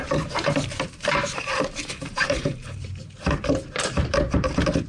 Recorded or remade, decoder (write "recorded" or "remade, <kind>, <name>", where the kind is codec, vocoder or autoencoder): remade, vocoder, BigVGAN v2